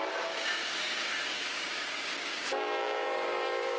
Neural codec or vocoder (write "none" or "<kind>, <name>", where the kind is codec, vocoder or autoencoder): codec, DAC